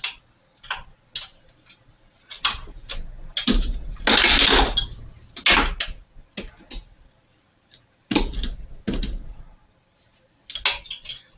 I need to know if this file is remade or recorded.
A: recorded